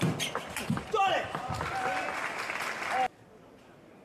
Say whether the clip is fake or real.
real